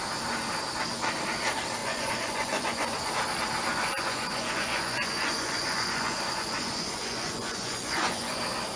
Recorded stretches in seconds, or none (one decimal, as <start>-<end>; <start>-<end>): 0.0-1.8; 3.1-3.7; 8.4-8.8